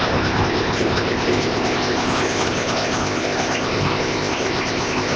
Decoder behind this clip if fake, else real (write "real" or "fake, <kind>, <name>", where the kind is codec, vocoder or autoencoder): fake, codec, ZipCodec